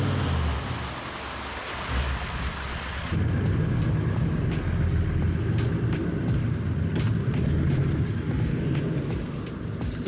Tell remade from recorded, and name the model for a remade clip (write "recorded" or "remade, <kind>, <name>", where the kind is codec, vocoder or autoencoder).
recorded